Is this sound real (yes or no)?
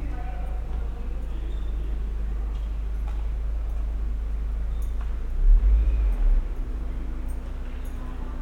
yes